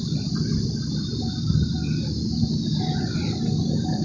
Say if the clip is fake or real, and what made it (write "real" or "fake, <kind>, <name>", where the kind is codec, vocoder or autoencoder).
real